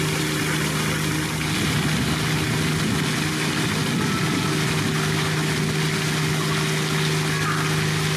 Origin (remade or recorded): recorded